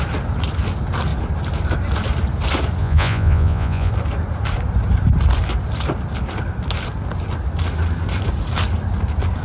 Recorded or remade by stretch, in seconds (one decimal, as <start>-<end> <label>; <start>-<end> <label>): 0.0-2.8 recorded; 2.8-3.9 remade; 3.9-9.4 recorded